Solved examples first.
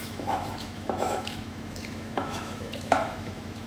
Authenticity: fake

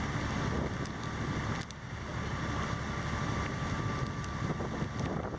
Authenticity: real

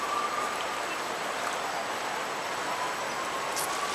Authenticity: real